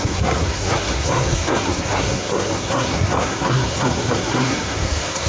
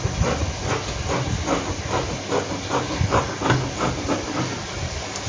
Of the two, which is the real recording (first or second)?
second